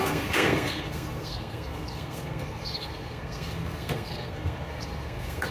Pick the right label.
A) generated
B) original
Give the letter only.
A